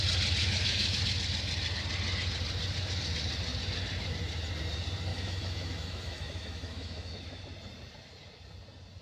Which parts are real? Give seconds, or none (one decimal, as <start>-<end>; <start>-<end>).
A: 0.0-0.4; 1.0-5.1; 7.4-9.0